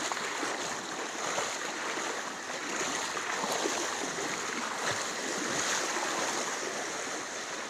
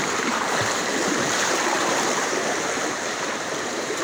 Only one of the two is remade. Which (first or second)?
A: second